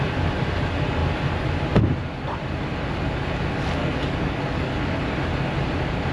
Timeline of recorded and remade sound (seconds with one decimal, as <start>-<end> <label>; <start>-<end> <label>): 0.0-3.8 recorded; 3.8-4.7 remade; 4.7-6.1 recorded